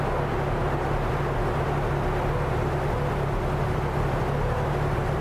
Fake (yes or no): no